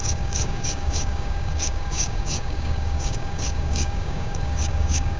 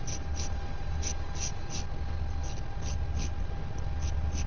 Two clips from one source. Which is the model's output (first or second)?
first